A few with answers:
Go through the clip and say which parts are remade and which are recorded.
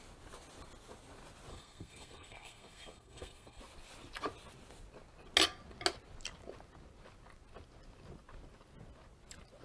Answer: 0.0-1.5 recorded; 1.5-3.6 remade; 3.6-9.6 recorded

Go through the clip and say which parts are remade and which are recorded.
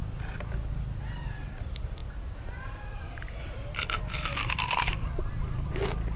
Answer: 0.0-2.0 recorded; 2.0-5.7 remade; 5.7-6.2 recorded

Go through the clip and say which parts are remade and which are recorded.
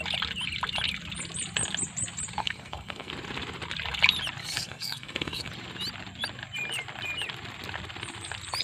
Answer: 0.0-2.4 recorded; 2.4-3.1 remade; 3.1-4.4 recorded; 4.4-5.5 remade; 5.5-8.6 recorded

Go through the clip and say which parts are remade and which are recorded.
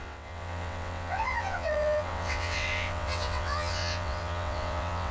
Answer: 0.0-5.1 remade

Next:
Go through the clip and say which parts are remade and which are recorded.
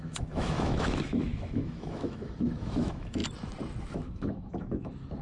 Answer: 0.0-3.2 remade; 3.2-3.8 recorded; 3.8-5.2 remade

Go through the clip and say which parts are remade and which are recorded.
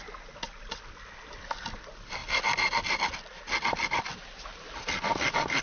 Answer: 0.0-5.6 recorded